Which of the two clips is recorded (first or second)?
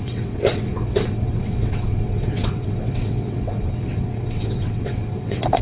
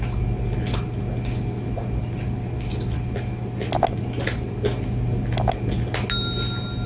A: second